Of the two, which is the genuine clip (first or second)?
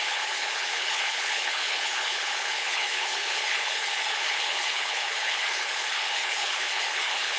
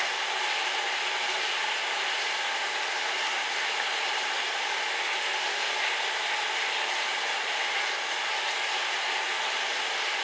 second